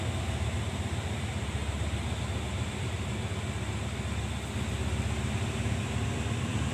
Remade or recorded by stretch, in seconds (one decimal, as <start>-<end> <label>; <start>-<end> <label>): 0.0-6.7 recorded